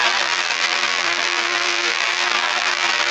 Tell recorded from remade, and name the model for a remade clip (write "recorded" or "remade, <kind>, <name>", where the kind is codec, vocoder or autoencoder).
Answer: remade, vocoder, BigVGAN v2